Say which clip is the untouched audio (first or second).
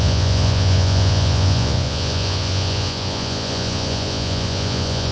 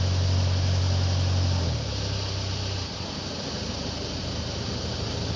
second